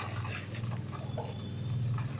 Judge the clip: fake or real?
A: real